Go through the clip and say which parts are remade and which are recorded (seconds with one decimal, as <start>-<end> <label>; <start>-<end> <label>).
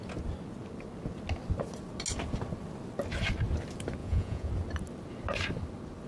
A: 0.0-4.0 recorded; 4.0-4.5 remade; 4.5-6.1 recorded